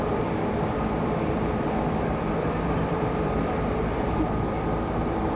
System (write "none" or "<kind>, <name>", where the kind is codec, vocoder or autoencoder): vocoder, BigVGAN v2